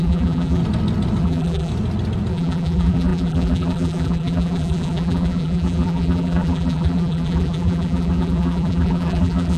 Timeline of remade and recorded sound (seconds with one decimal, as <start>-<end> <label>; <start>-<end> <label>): 0.0-0.6 remade; 0.6-1.2 recorded; 1.2-1.7 remade; 1.7-2.3 recorded; 2.3-9.6 remade